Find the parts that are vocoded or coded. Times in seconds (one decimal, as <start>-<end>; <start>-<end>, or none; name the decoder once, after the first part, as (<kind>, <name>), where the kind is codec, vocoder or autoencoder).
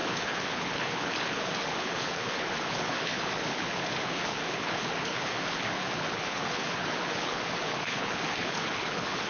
0.0-9.3 (codec, HILCodec)